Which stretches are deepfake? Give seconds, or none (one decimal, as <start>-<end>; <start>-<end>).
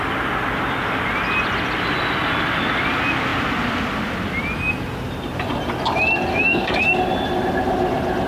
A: 6.3-7.0